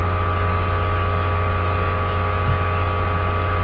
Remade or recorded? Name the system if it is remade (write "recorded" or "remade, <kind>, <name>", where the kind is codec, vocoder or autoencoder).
recorded